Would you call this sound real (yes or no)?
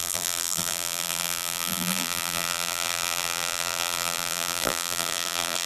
no